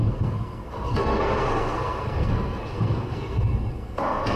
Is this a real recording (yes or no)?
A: no